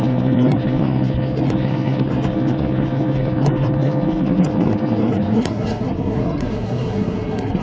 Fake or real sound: fake